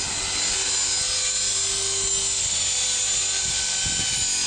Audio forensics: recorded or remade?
recorded